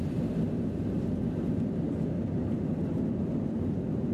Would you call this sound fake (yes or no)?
no